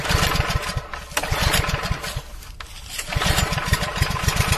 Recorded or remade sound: recorded